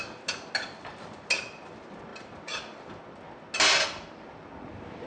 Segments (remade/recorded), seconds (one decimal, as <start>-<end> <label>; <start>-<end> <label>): 0.0-5.1 recorded

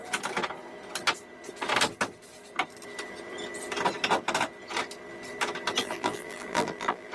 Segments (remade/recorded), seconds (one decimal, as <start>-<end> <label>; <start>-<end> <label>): 0.0-5.8 recorded; 5.8-7.1 remade

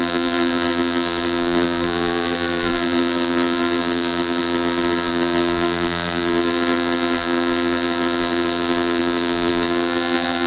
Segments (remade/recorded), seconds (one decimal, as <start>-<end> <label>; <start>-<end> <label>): 0.0-10.5 remade

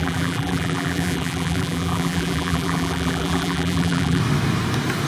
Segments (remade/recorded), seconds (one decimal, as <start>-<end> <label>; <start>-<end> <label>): 0.0-4.2 remade; 4.2-5.1 recorded